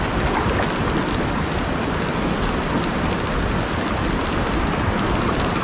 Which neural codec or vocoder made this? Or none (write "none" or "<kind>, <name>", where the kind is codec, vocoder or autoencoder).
none